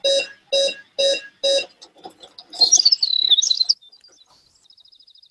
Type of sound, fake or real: real